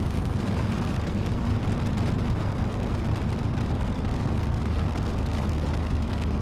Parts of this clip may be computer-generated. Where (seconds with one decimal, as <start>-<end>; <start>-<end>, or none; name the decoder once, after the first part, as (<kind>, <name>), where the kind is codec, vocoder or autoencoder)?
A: 0.0-1.5 (codec, SNAC); 2.4-3.1; 3.7-6.4